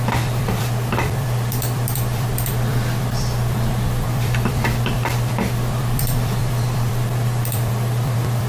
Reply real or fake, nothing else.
fake